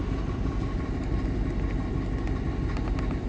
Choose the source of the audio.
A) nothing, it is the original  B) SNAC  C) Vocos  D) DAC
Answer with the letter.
A